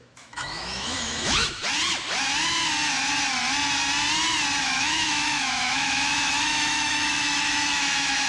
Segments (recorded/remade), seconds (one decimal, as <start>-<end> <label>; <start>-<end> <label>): 0.0-1.6 remade; 1.6-4.6 recorded; 4.6-8.3 remade